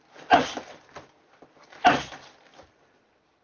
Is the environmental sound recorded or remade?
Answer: recorded